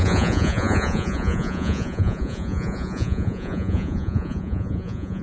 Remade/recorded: remade